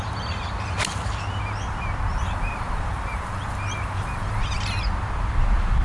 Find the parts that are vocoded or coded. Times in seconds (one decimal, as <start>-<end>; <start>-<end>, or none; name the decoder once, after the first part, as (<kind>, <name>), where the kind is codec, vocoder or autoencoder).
2.1-4.4 (vocoder, BigVGAN v2)